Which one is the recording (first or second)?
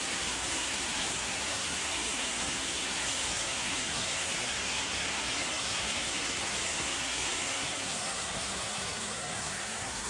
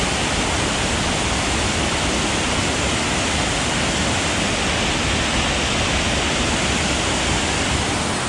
second